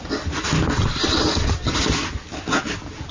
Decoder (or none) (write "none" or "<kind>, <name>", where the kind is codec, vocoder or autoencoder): none